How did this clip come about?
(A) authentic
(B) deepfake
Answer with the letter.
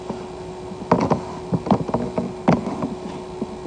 A